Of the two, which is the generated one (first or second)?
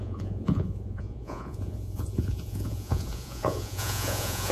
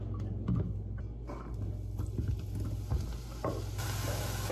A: first